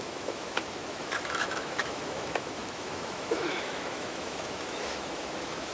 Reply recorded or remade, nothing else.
remade